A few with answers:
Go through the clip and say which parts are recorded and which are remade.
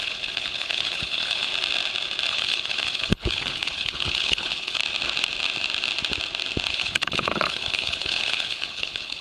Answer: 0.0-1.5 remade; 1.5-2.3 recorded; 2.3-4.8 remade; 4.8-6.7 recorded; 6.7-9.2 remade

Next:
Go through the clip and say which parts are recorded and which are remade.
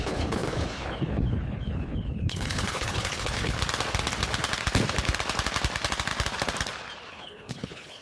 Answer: 0.0-3.6 remade; 3.6-7.1 recorded; 7.1-8.0 remade